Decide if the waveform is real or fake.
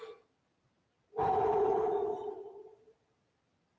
real